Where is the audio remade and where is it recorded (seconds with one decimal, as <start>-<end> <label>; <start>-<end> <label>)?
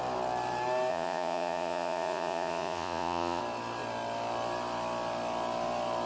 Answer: 0.0-0.9 recorded; 0.9-3.4 remade; 3.4-6.1 recorded